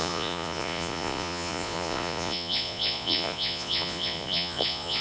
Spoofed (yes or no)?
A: yes